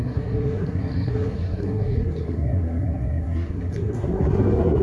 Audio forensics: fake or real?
fake